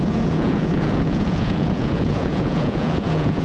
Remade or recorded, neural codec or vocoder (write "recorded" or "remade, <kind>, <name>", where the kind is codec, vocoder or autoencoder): remade, vocoder, Vocos